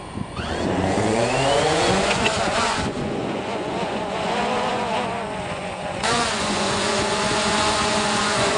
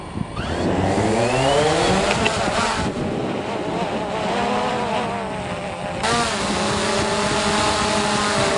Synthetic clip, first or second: first